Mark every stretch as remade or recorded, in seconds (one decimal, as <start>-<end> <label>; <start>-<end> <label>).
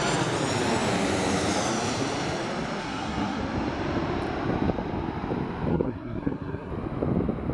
0.0-2.8 recorded; 2.8-3.4 remade; 3.4-5.7 recorded; 5.7-6.7 remade; 6.7-7.5 recorded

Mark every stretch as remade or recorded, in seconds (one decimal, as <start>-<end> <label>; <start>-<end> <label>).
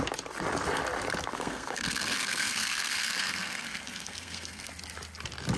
0.0-1.3 recorded; 1.3-4.7 remade; 4.7-5.6 recorded